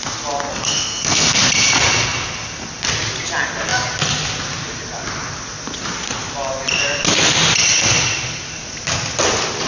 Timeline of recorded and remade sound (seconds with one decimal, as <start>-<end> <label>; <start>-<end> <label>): 0.0-0.5 recorded; 0.5-1.4 remade; 1.4-9.7 recorded